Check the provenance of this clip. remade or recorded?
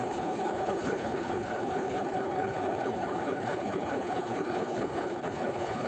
remade